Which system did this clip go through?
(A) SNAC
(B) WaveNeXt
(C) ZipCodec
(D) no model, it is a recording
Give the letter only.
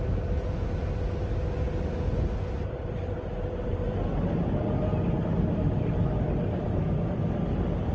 D